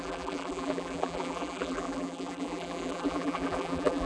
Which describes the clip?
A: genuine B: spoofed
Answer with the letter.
B